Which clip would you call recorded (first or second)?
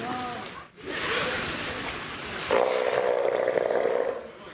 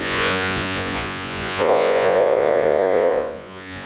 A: first